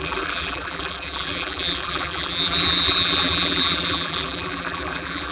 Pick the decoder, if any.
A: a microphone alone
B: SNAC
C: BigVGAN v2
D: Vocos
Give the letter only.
C